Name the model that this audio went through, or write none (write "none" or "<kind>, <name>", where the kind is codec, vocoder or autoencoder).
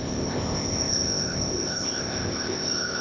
codec, ZipCodec